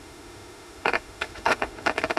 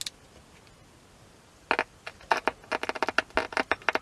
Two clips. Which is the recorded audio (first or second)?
second